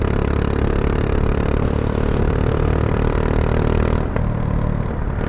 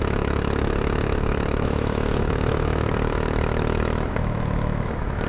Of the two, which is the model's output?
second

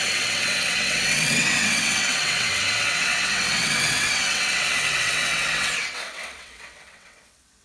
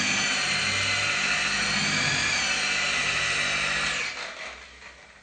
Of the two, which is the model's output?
first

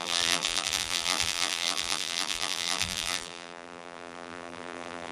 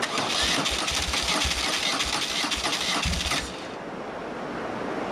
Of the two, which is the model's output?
first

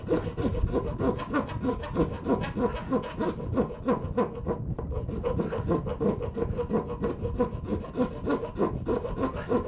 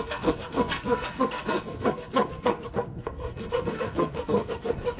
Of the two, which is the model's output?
second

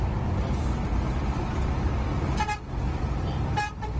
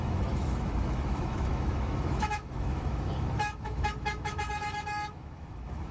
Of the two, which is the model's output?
second